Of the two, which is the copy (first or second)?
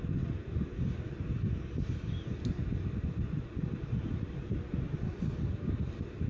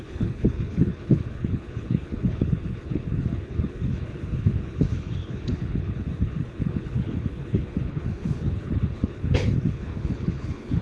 second